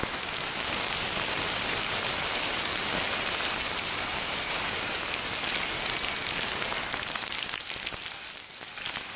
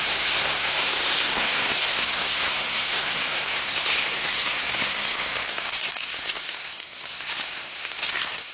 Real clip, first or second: first